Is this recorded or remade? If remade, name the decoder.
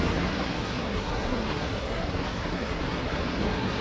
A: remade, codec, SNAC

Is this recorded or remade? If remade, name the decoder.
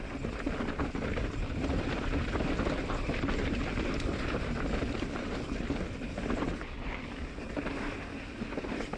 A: recorded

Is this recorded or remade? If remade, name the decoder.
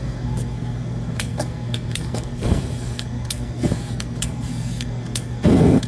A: remade, codec, SNAC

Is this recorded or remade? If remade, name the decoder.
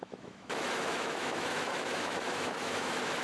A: remade, autoencoder, DAC-VAE